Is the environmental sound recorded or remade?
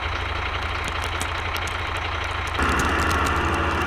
recorded